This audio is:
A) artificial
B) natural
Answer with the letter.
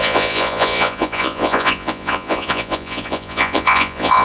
A